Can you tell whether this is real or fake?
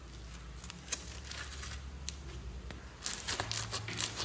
real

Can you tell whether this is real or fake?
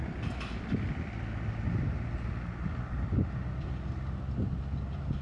real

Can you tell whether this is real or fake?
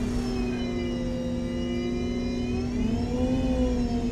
real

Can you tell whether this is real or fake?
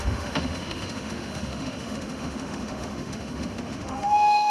fake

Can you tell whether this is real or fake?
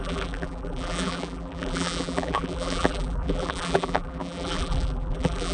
fake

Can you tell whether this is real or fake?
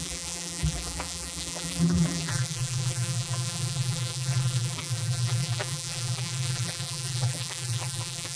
fake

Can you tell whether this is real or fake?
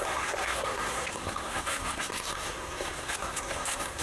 fake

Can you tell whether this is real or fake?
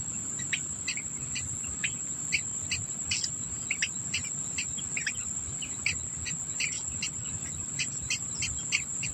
real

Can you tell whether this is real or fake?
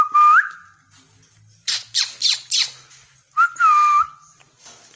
real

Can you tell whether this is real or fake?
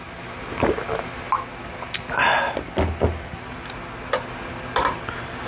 real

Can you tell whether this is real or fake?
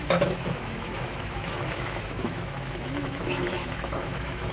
fake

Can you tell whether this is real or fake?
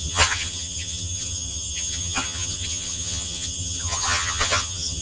fake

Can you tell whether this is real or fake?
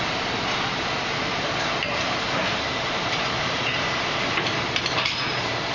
fake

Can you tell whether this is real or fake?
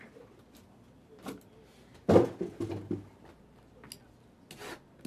real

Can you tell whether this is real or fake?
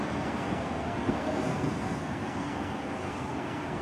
fake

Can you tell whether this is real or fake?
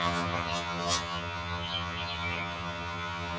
fake